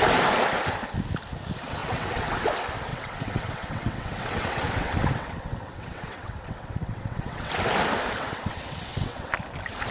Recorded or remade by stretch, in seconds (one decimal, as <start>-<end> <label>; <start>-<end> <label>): 0.0-1.8 recorded; 1.8-2.4 remade; 2.4-2.9 recorded; 2.9-7.5 remade; 7.5-8.2 recorded; 8.2-9.3 remade; 9.3-9.9 recorded